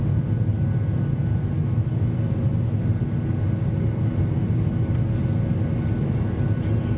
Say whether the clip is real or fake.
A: real